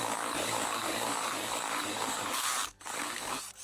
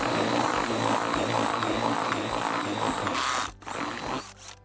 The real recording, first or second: second